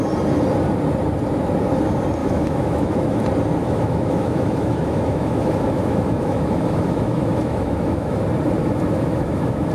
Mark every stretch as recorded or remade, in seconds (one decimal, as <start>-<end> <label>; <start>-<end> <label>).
0.0-2.2 recorded; 2.2-3.2 remade; 3.2-3.6 recorded; 3.6-8.2 remade; 8.2-8.6 recorded; 8.6-9.7 remade